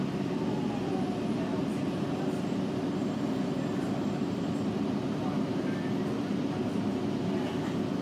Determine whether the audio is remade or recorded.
recorded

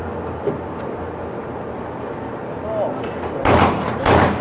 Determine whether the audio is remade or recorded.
recorded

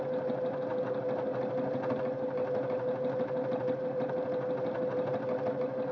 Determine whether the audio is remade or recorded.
recorded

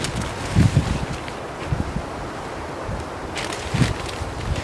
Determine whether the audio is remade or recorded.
recorded